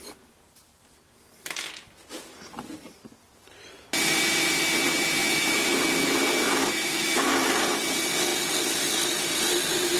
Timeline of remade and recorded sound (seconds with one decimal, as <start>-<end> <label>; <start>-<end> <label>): 0.0-5.2 recorded; 5.2-7.3 remade; 7.3-10.0 recorded